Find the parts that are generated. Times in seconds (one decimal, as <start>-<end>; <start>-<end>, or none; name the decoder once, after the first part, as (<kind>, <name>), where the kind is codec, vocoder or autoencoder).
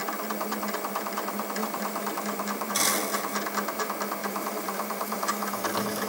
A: 1.6-2.7 (vocoder, BigVGAN v2); 4.2-5.4